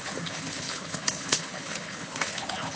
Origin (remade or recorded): remade